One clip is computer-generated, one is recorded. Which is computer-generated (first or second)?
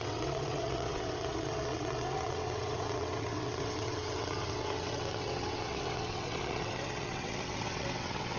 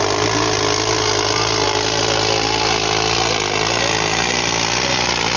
first